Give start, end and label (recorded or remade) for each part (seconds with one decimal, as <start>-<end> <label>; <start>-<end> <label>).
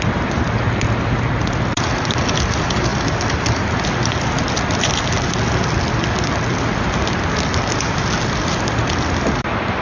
0.0-9.8 recorded